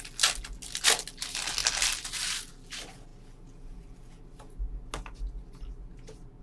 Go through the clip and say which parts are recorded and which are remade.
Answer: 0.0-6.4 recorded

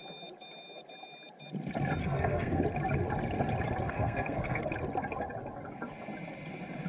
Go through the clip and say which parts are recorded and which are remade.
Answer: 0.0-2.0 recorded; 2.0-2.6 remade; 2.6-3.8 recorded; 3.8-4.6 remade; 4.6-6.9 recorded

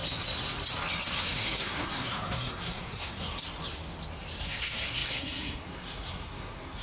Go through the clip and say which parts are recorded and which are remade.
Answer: 0.0-1.1 recorded; 1.1-3.4 remade; 3.4-4.4 recorded; 4.4-6.8 remade

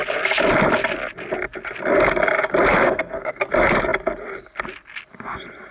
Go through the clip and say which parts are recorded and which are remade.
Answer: 0.0-2.8 recorded; 2.8-3.5 remade; 3.5-5.7 recorded

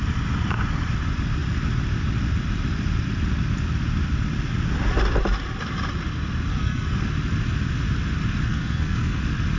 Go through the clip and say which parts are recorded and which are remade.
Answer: 0.0-6.5 recorded; 6.5-7.1 remade; 7.1-8.5 recorded; 8.5-9.2 remade; 9.2-9.6 recorded

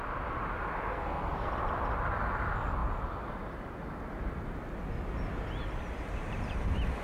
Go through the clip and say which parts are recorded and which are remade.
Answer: 0.0-0.9 recorded; 0.9-1.5 remade; 1.5-7.0 recorded

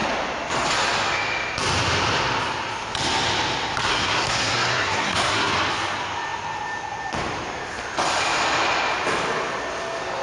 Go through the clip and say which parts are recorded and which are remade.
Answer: 0.0-3.9 recorded; 3.9-5.5 remade; 5.5-10.2 recorded